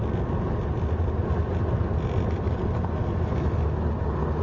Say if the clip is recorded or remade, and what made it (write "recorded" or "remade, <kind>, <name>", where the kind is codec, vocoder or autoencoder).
recorded